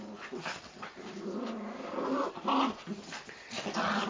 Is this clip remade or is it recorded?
recorded